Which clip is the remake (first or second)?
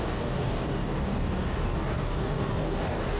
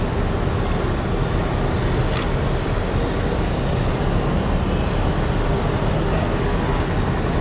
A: first